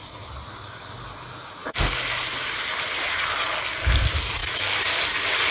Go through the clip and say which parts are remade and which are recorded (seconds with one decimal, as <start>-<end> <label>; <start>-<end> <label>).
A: 0.0-1.6 recorded; 1.6-3.4 remade; 3.4-5.5 recorded